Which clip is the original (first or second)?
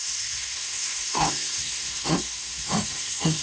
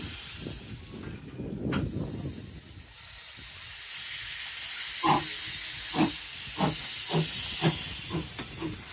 second